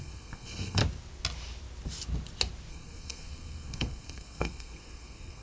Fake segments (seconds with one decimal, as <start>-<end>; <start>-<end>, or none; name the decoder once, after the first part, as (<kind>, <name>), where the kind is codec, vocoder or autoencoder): 0.0-0.8 (codec, SNAC); 2.7-5.4